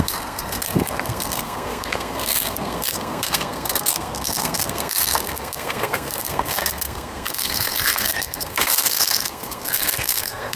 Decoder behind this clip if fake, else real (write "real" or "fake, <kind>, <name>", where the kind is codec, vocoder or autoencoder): fake, codec, SNAC